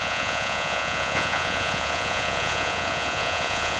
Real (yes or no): no